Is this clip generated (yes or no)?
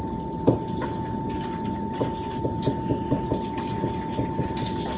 no